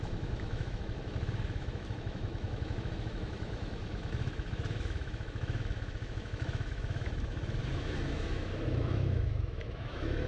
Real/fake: fake